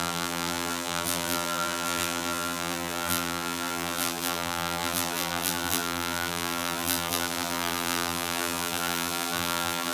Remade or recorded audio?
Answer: remade